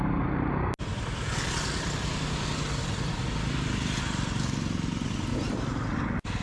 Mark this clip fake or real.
real